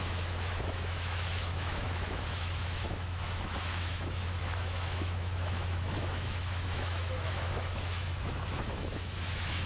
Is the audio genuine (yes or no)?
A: no